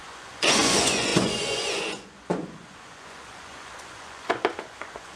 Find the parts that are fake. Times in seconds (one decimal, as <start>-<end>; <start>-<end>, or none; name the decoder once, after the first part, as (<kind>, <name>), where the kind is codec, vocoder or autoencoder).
0.0-5.2 (vocoder, Vocos)